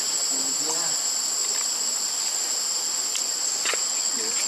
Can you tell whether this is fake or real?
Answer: real